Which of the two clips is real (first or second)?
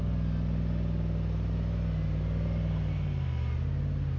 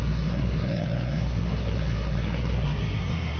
first